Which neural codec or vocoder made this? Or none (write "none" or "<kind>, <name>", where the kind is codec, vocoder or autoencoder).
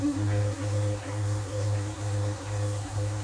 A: codec, SNAC